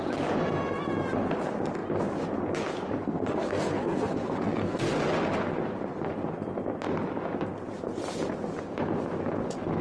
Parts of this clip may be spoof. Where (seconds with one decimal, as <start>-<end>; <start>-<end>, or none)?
3.0-4.9